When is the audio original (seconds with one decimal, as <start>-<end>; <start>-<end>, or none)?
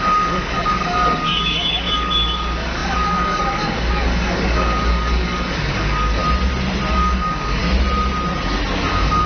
6.2-6.9; 7.6-8.9